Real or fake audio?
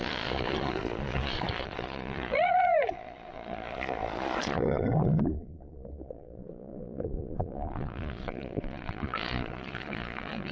fake